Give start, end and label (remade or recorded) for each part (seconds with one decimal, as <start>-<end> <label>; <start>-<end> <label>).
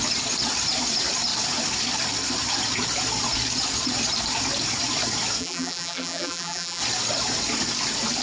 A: 0.0-5.4 recorded; 5.4-6.8 remade; 6.8-8.2 recorded